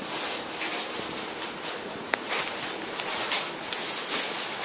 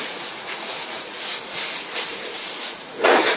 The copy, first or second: second